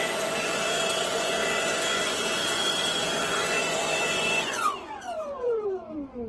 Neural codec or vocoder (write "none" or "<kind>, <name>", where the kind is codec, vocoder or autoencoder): vocoder, Vocos